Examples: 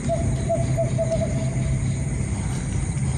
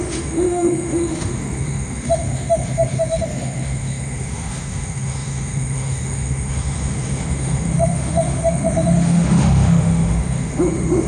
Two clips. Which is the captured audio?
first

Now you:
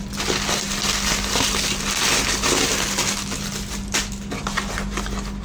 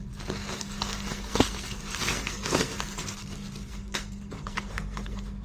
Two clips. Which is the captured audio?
first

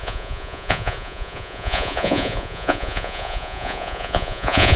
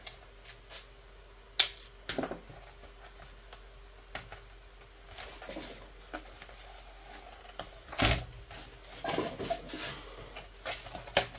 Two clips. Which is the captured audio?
second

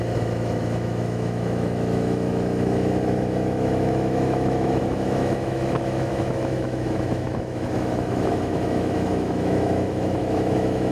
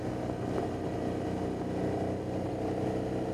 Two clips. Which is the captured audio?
second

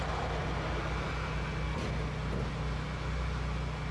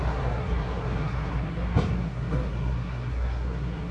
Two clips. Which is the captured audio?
first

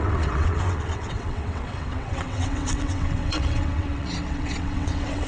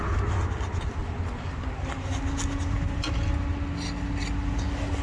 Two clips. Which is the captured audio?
second